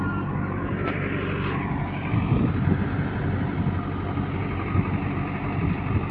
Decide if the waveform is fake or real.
real